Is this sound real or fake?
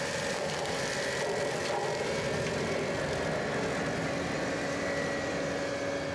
real